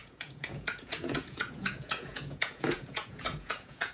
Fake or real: fake